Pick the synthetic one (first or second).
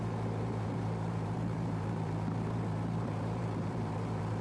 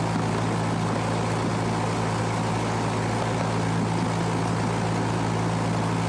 first